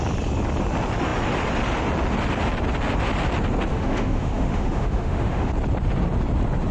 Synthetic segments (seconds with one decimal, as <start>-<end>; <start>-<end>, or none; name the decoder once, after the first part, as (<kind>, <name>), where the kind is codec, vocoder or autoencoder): 3.7-5.5 (autoencoder, DAC-VAE)